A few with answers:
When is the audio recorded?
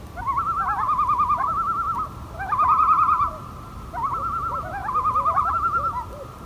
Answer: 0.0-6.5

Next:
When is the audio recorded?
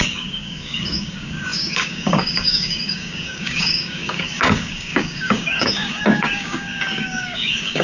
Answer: none